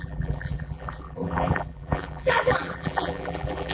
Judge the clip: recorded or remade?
remade